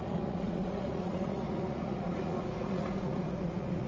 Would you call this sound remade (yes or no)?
yes